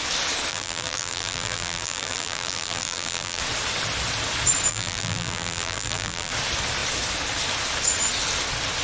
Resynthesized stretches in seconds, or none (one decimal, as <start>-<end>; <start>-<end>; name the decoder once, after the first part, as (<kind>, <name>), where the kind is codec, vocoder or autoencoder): 0.5-3.4 (vocoder, BigVGAN v2); 4.7-6.3